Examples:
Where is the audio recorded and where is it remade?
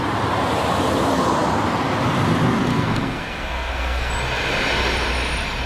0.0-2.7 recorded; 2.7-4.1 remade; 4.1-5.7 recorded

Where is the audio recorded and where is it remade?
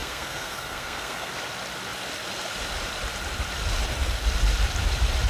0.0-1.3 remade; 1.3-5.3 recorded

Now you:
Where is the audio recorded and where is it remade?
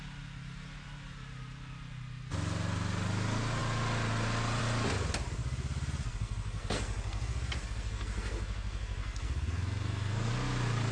0.0-6.1 recorded; 6.1-10.3 remade; 10.3-10.9 recorded